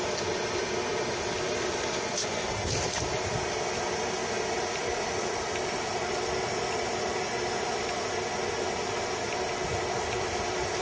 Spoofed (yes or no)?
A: no